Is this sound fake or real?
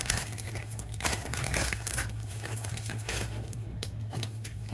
fake